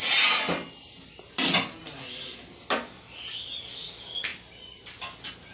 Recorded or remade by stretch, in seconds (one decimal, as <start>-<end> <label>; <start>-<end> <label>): 0.0-5.5 recorded